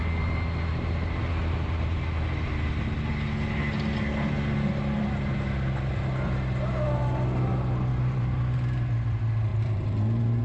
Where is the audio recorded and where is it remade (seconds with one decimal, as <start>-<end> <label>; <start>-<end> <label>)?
0.0-7.9 recorded; 7.9-8.4 remade; 8.4-9.5 recorded; 9.5-10.4 remade